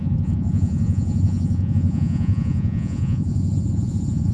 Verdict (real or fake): fake